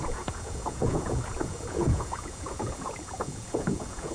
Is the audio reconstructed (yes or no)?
yes